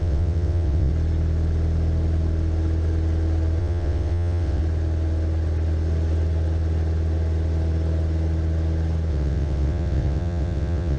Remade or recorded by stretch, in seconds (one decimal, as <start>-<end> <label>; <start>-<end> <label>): 0.0-0.9 remade; 0.9-3.6 recorded; 3.6-4.6 remade; 4.6-9.1 recorded; 9.1-11.0 remade